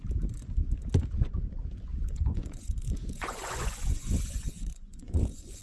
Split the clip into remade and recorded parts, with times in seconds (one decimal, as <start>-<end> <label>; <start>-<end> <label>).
0.0-1.9 recorded; 1.9-5.6 remade